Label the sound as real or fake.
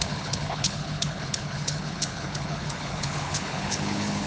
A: fake